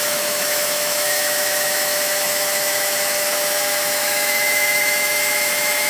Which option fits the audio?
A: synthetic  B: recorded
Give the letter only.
A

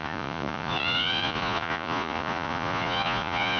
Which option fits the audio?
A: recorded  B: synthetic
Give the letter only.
B